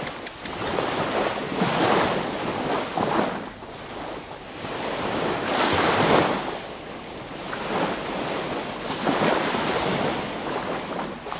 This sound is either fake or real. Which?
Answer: real